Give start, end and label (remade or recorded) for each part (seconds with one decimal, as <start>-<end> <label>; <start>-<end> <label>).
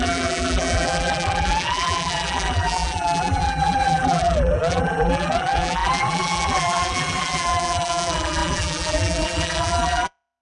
0.0-10.4 remade